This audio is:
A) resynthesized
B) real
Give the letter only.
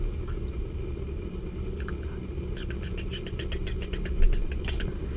B